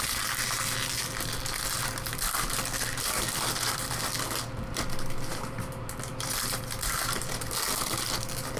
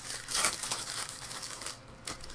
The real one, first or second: first